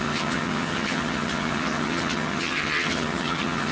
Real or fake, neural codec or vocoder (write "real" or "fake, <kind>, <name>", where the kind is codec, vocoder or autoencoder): fake, vocoder, HiFi-GAN